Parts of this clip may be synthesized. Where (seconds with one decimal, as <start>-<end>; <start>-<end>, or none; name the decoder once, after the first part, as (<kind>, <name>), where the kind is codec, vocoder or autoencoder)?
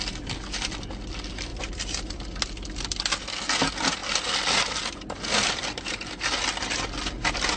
none